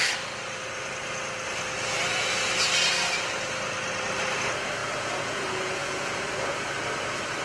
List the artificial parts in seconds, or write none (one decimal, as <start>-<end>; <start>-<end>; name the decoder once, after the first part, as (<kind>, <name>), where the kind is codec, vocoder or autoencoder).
4.8-6.6 (vocoder, Vocos)